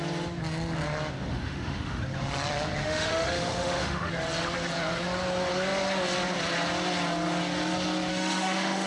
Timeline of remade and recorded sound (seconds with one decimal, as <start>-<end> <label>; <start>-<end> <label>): 0.0-1.3 recorded; 1.3-2.0 remade; 2.0-2.8 recorded; 2.8-4.1 remade; 4.1-8.1 recorded; 8.1-8.9 remade